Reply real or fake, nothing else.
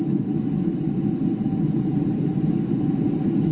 real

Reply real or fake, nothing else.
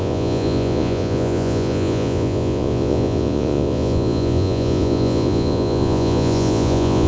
fake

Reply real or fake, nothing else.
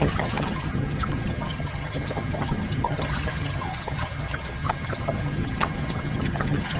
fake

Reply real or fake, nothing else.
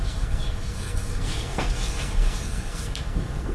fake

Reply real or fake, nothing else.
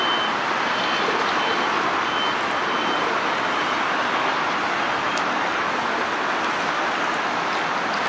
real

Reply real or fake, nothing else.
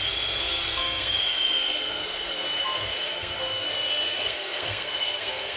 fake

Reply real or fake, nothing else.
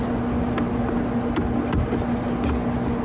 real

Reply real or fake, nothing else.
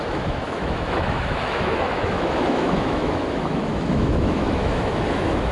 fake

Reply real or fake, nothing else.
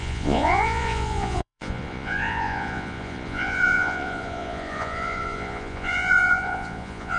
fake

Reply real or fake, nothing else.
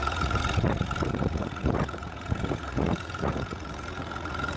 fake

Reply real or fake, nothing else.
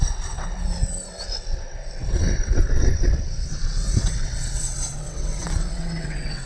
fake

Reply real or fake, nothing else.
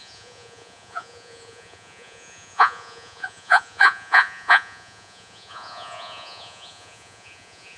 fake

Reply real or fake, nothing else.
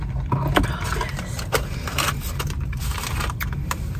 real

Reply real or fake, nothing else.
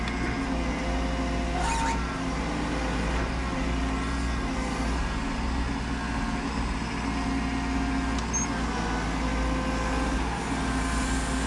real